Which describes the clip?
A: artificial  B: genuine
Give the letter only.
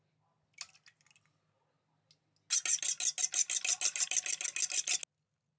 B